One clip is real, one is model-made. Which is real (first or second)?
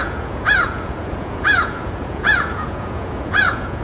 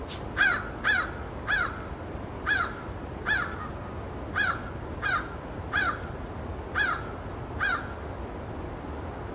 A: second